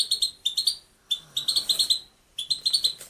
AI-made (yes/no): no